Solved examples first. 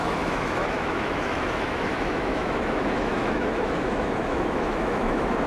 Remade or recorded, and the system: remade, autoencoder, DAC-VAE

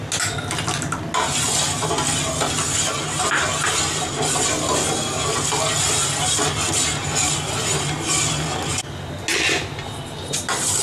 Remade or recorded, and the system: recorded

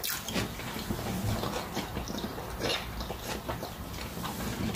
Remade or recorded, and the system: recorded